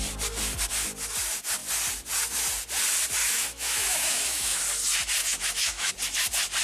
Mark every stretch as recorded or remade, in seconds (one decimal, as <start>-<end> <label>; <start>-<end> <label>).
0.0-3.2 recorded; 3.2-4.6 remade; 4.6-5.2 recorded; 5.2-5.9 remade; 5.9-6.6 recorded